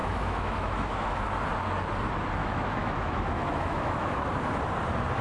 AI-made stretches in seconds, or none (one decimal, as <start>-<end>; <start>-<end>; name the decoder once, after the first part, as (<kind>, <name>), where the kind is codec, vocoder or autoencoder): 0.0-1.2 (autoencoder, DAC-VAE); 2.4-4.3